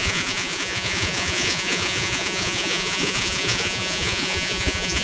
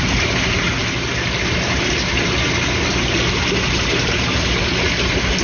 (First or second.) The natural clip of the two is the second